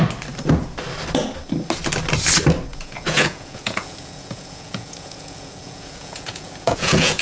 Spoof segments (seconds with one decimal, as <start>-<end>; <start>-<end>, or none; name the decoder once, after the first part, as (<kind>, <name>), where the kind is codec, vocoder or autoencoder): 2.7-7.2 (vocoder, Vocos)